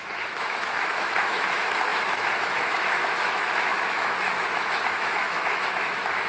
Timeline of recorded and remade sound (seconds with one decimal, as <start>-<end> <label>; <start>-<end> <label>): 0.0-6.3 remade